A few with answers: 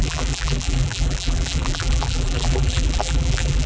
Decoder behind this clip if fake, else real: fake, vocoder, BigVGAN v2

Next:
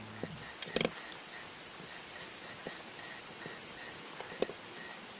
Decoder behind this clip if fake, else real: real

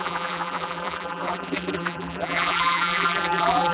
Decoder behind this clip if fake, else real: fake, vocoder, BigVGAN v2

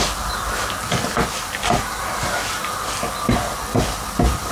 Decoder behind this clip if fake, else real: real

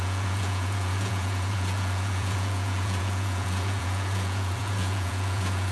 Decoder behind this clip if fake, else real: fake, vocoder, Vocos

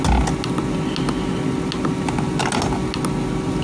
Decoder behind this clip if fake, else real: real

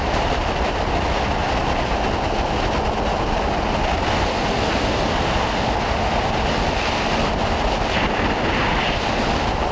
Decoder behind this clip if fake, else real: real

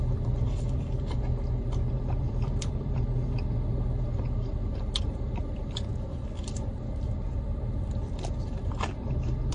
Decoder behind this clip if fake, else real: fake, vocoder, BigVGAN v2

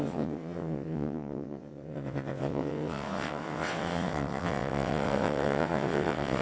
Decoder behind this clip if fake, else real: fake, vocoder, WaveNeXt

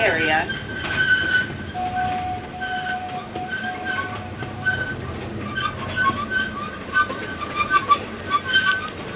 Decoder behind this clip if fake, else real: real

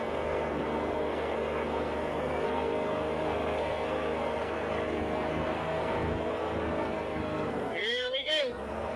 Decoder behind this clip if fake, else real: fake, codec, SNAC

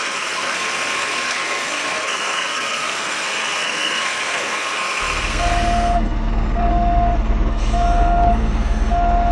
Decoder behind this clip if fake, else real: fake, codec, SNAC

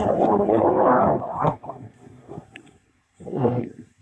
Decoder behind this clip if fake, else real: fake, codec, SNAC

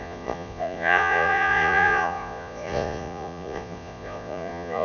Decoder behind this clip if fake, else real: fake, vocoder, Vocos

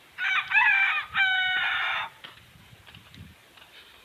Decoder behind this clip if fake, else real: real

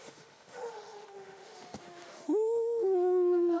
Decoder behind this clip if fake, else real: fake, autoencoder, DAC-VAE